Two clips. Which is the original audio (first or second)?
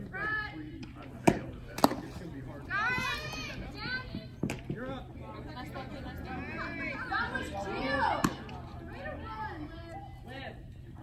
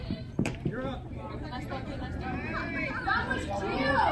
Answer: first